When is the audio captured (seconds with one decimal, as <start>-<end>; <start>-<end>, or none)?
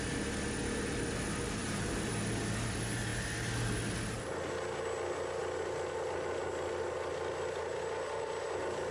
0.0-1.6; 2.1-8.9